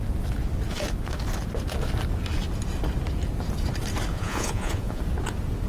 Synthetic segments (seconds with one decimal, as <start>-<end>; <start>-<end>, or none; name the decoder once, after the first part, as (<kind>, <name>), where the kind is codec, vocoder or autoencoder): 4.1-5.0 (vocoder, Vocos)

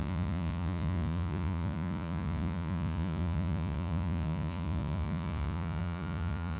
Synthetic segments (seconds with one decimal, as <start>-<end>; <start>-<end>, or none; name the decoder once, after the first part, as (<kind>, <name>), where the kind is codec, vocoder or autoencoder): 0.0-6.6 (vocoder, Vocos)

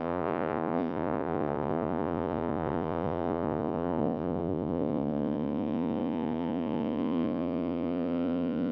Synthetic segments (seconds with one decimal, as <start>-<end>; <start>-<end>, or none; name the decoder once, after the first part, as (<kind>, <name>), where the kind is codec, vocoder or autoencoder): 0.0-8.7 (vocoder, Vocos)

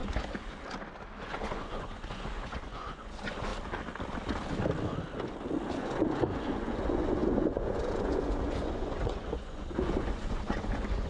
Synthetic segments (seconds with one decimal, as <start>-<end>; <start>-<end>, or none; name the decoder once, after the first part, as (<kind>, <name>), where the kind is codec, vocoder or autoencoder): 1.2-3.5 (vocoder, Vocos); 5.7-11.1